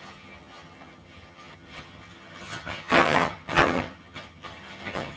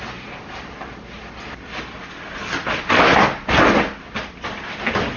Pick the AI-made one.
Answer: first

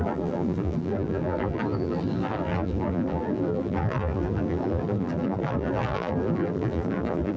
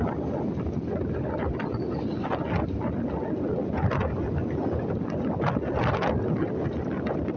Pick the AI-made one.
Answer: first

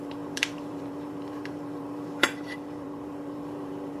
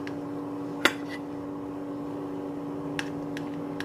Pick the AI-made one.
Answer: first